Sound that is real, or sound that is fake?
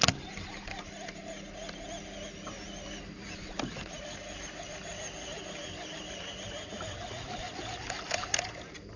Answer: real